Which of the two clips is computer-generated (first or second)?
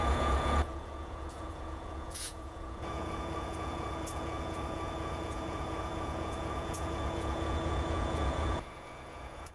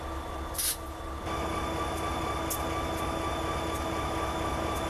first